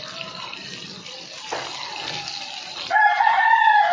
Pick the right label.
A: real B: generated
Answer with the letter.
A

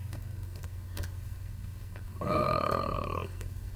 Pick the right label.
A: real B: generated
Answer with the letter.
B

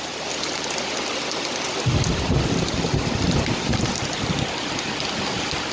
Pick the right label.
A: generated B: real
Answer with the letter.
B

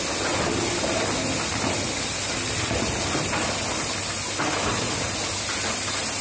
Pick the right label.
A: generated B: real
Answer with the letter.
B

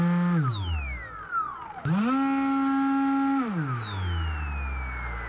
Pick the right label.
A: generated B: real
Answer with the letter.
B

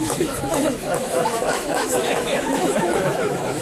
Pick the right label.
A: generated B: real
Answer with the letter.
A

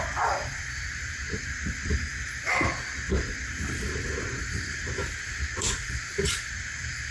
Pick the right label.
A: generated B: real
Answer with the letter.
A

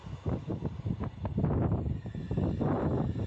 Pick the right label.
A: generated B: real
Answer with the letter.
B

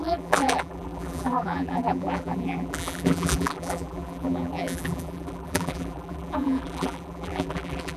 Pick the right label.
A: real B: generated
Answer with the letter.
B